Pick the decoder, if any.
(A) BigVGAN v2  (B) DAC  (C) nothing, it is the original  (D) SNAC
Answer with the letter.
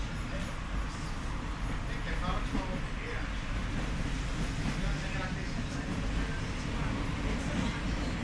C